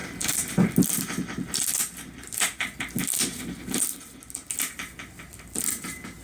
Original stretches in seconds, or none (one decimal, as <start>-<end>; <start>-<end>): 0.0-6.2